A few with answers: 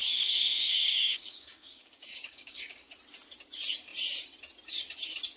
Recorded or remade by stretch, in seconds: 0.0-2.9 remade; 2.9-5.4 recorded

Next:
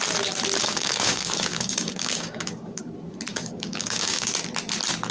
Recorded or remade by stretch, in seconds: 0.0-0.6 recorded; 0.6-2.8 remade; 2.8-3.3 recorded; 3.3-4.3 remade; 4.3-5.1 recorded

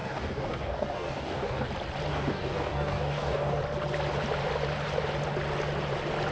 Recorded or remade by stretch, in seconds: 0.0-1.7 remade; 1.7-2.1 recorded; 2.1-3.6 remade; 3.6-6.3 recorded